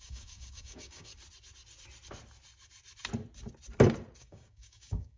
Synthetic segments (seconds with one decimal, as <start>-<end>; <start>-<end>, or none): 0.0-1.1; 4.2-5.2